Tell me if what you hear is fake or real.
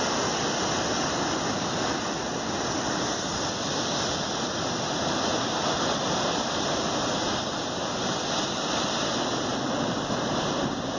real